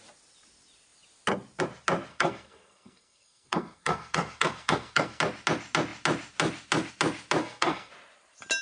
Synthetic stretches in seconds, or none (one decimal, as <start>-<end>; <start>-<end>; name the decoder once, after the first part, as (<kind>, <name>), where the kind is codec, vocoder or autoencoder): 2.1-5.2 (codec, SNAC); 7.4-7.9